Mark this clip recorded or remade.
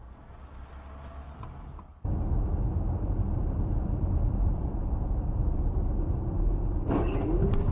recorded